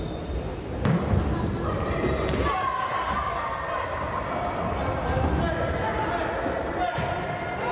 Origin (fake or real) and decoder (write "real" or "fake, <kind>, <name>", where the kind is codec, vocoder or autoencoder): real